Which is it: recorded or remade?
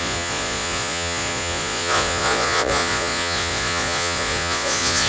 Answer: remade